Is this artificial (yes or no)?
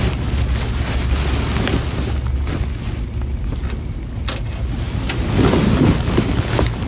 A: no